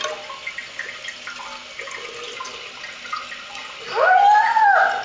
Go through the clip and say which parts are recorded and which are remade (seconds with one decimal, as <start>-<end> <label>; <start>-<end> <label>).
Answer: 0.0-5.0 recorded